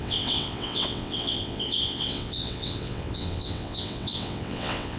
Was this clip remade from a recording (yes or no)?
yes